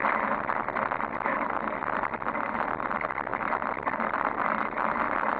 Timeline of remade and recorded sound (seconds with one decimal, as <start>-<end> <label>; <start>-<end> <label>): 0.0-5.4 recorded